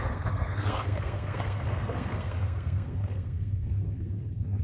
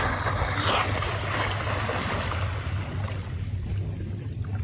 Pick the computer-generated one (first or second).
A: first